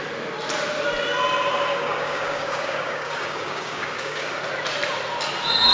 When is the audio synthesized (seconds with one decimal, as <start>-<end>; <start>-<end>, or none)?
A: 1.7-4.4